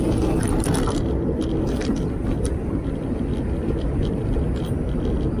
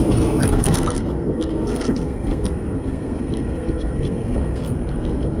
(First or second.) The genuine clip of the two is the first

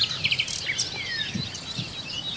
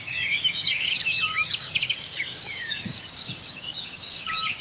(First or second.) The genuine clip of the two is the first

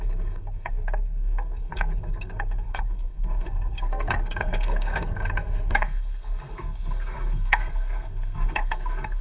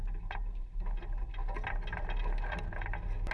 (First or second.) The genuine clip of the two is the second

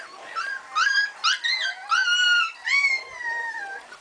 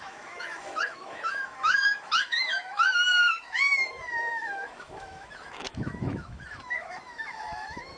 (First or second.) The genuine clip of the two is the first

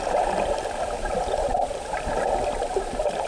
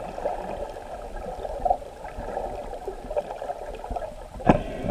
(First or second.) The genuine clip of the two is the second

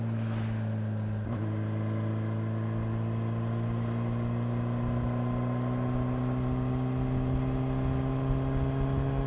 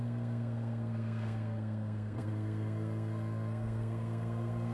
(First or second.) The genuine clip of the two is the first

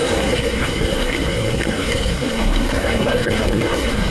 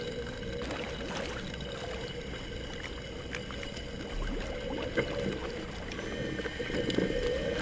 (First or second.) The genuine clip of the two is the second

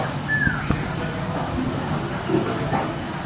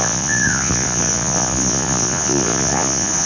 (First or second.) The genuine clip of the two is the first